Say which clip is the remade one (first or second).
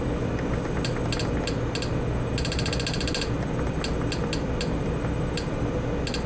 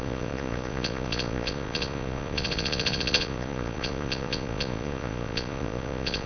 second